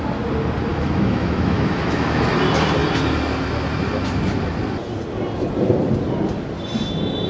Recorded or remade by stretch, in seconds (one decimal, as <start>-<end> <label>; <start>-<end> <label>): 0.0-0.7 recorded; 0.7-2.3 remade; 2.3-7.3 recorded